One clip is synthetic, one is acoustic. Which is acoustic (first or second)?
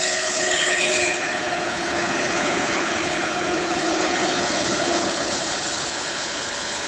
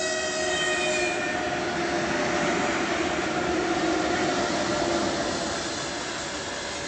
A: second